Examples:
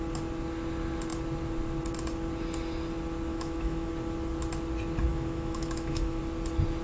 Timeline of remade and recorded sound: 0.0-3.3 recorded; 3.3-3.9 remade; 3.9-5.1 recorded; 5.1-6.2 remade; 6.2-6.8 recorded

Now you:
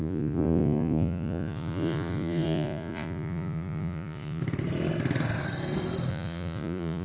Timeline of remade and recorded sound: 0.0-4.4 remade; 4.4-6.1 recorded; 6.1-7.0 remade

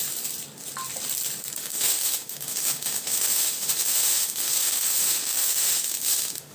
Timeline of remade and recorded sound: 0.0-1.6 recorded; 1.6-6.5 remade

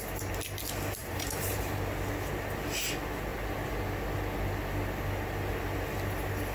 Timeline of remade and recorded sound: 0.0-1.0 recorded; 1.0-2.3 remade; 2.3-6.5 recorded